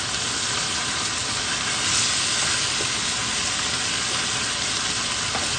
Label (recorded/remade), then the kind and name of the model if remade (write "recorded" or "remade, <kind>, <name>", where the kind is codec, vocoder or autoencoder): recorded